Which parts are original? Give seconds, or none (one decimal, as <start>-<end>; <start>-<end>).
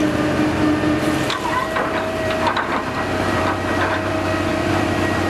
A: 0.0-1.6; 4.1-4.5